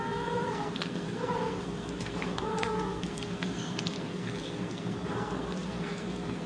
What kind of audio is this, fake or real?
fake